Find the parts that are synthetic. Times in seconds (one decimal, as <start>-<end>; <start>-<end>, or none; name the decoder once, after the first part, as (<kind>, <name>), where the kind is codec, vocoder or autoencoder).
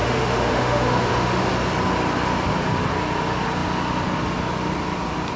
0.0-1.5 (autoencoder, DAC-VAE)